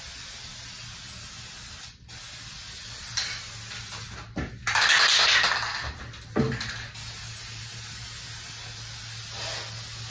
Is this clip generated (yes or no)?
no